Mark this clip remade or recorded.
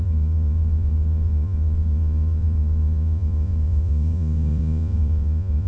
remade